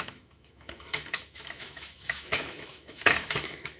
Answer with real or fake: fake